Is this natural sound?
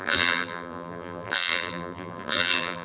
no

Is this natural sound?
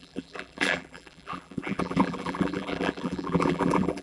no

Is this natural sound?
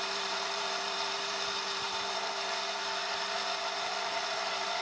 no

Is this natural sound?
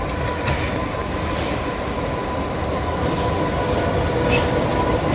yes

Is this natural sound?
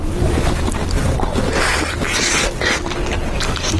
yes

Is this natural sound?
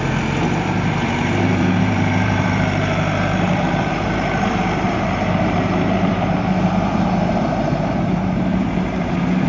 no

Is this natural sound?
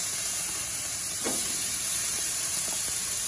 no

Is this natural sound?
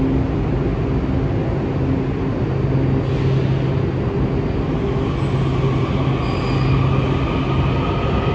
yes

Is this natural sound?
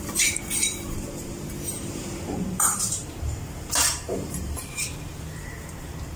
no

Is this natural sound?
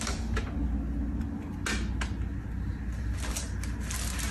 yes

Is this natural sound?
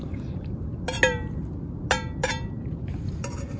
yes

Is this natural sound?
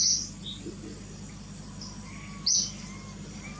yes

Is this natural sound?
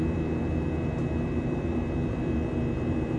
no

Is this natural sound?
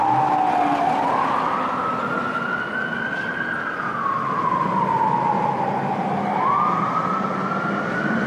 yes